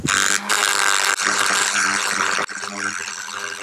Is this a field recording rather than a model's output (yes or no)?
yes